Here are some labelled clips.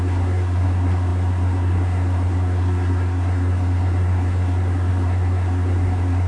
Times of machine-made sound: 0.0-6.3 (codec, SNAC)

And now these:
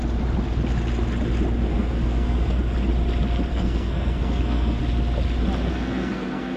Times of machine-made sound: 1.7-2.6 (codec, SNAC); 3.5-4.8; 5.7-6.6

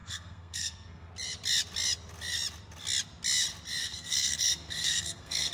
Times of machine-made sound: 0.0-1.1 (codec, SNAC); 3.8-5.5

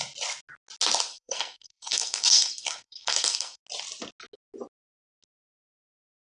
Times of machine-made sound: 1.1-3.6 (codec, SNAC)

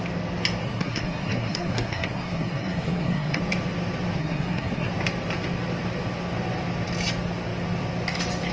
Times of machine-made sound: 0.6-3.4 (codec, SNAC); 4.2-4.9

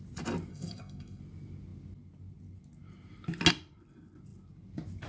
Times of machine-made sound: 0.5-1.2 (codec, SNAC)

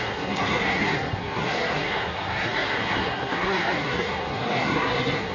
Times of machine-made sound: 0.0-5.3 (codec, SNAC)

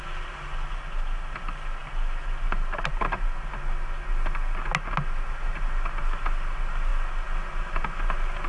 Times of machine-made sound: none